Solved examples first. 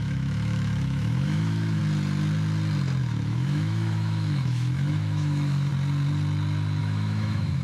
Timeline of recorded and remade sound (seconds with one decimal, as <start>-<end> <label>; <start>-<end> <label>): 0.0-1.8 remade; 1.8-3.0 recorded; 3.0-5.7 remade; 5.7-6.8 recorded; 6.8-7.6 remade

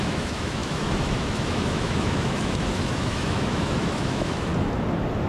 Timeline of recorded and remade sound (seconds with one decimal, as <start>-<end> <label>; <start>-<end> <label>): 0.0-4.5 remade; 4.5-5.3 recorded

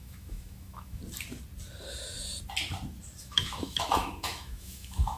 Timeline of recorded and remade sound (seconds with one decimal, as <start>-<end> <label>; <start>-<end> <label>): 0.0-1.0 remade; 1.0-3.2 recorded; 3.2-5.2 remade